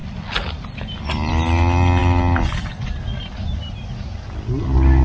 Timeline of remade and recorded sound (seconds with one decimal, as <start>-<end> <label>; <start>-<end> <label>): 0.0-5.0 recorded